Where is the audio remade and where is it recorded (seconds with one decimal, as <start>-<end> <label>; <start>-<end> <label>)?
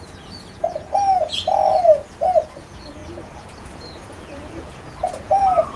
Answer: 0.0-5.8 remade